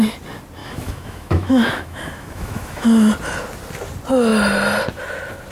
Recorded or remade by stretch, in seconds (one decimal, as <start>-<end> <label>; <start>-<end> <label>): 0.0-0.6 recorded; 0.6-3.1 remade; 3.1-5.5 recorded